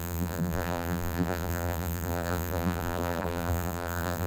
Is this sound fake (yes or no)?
yes